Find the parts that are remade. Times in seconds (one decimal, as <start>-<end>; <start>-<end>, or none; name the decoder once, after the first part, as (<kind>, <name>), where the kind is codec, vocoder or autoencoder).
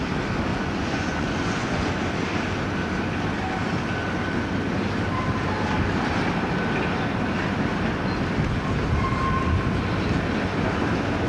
0.5-1.9 (vocoder, Vocos)